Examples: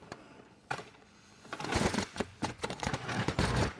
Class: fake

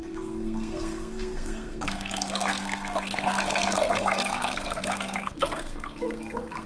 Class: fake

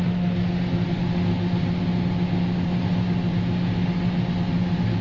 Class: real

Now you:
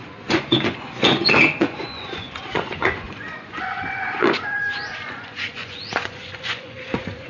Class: fake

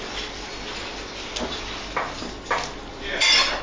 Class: real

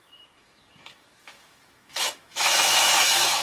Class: fake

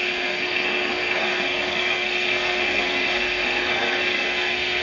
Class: fake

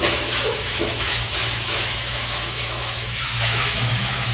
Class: fake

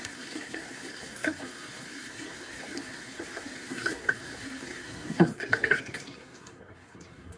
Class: fake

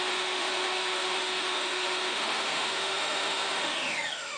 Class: fake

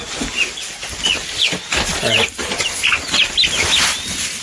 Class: real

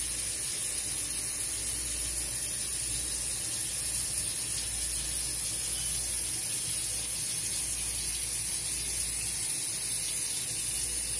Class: real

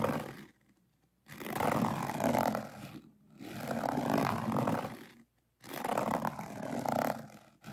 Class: fake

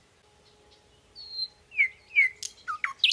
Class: real